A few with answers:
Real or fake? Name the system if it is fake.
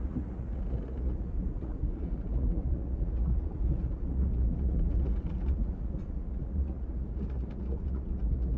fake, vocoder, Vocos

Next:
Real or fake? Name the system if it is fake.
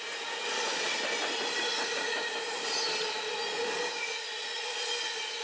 real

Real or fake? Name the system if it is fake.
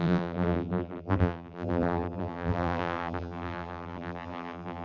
fake, vocoder, BigVGAN v2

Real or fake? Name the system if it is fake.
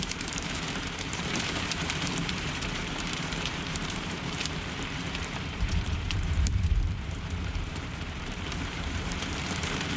fake, vocoder, BigVGAN v2